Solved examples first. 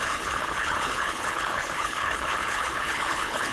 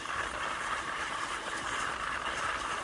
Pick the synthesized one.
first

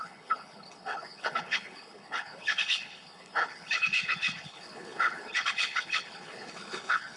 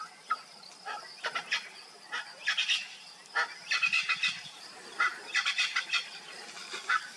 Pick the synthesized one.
first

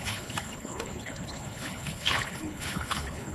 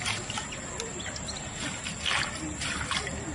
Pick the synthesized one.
first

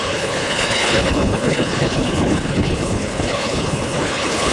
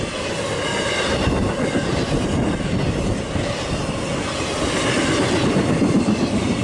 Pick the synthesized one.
first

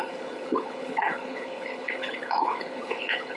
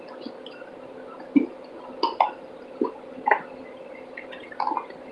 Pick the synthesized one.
first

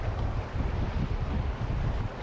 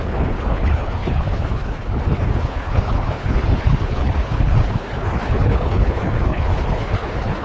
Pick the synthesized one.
second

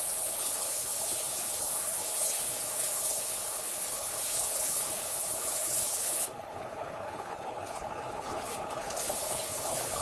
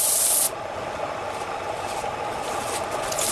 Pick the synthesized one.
first